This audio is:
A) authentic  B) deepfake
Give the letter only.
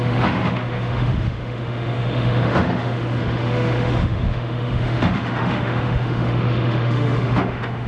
B